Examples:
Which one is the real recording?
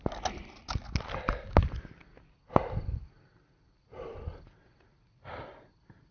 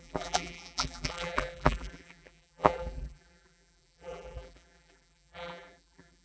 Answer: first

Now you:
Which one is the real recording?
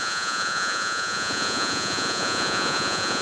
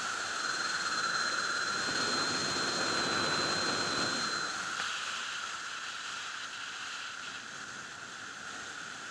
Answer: second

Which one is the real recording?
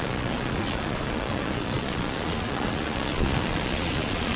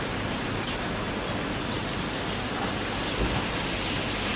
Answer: second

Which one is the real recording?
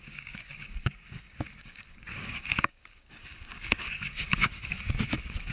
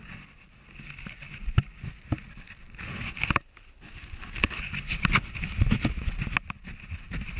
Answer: second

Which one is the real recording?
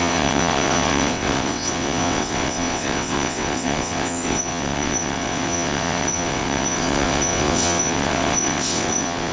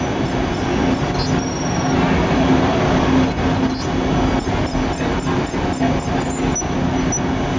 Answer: second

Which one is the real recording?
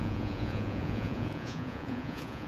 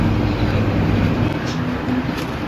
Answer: second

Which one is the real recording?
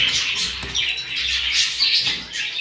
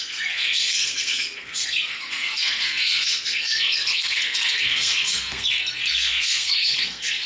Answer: first